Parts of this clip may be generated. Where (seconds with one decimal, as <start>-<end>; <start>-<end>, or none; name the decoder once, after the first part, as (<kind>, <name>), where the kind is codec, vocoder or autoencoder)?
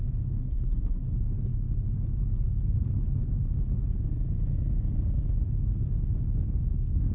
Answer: 0.4-1.1 (codec, SNAC)